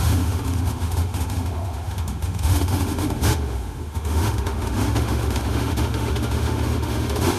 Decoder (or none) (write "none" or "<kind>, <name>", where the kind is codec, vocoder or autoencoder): autoencoder, DAC-VAE